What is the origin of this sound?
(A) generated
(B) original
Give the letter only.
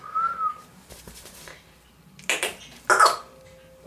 B